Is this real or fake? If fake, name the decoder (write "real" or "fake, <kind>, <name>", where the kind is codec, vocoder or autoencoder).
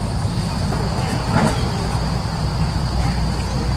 real